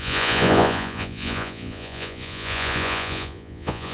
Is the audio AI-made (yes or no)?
yes